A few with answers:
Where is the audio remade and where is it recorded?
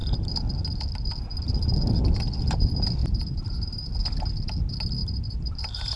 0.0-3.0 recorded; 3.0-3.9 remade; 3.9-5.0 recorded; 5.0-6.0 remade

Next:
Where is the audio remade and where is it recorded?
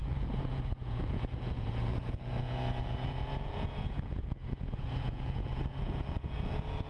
0.0-6.9 remade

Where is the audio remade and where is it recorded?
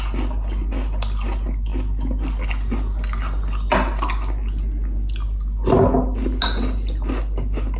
0.0-7.8 recorded